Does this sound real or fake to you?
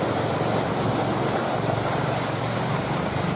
fake